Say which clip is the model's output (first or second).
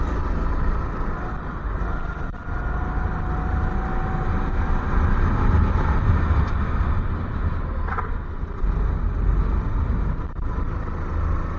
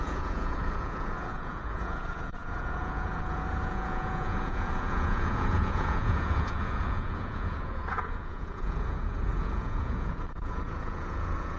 second